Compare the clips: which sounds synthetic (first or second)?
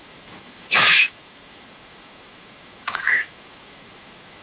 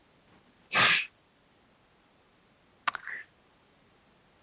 first